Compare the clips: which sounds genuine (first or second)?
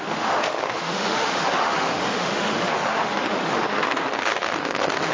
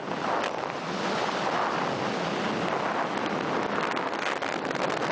second